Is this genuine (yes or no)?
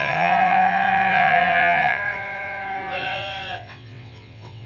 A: no